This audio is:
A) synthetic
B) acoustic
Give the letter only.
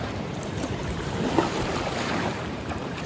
A